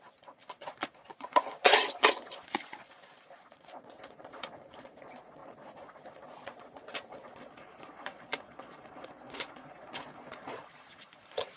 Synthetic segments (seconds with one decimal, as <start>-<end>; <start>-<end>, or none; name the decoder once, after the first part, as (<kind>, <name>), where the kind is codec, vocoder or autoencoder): 0.0-11.6 (vocoder, Vocos)